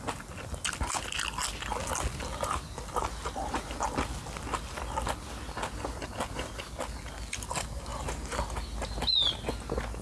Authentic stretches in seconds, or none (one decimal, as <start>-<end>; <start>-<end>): 0.0-10.0